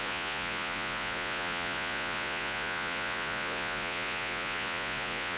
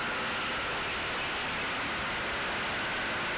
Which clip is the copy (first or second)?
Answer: first